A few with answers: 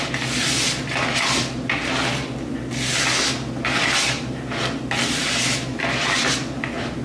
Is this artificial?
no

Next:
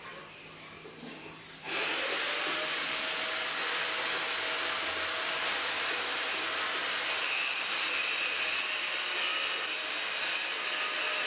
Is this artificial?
no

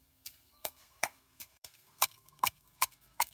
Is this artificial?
yes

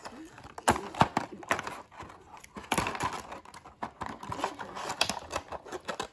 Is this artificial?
no